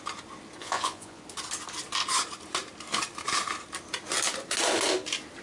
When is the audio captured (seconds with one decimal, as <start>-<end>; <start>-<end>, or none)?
0.0-0.6; 1.2-5.4